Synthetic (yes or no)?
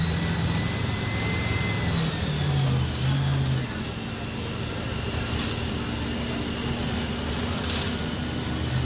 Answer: no